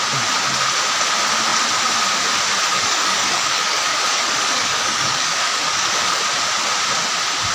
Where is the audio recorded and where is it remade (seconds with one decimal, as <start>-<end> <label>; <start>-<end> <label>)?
0.0-2.7 recorded; 2.7-6.2 remade; 6.2-7.5 recorded